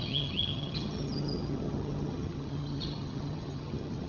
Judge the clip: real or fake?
fake